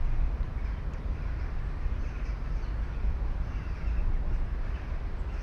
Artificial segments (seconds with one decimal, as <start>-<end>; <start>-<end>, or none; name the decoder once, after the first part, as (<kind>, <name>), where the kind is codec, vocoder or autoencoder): none